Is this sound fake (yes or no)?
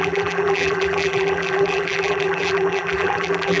yes